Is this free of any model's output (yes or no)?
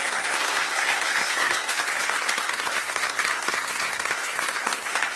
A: no